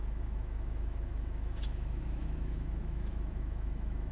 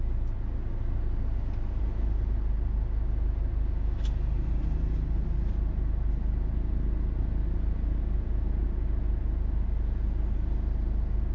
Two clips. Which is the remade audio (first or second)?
first